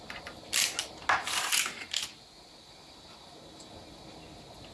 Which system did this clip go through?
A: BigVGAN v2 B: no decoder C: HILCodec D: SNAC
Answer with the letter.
B